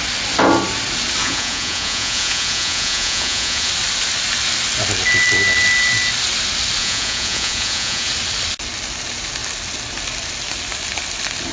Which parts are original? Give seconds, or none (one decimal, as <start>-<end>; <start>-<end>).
0.0-1.2; 3.7-6.8; 8.1-11.5